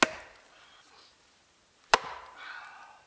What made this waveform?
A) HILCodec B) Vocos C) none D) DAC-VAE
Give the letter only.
C